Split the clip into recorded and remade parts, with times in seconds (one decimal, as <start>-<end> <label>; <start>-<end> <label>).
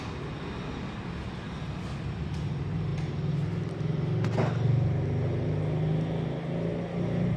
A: 0.0-7.4 recorded